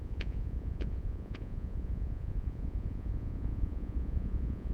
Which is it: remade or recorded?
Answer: remade